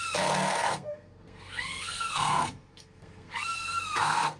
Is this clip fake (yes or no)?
yes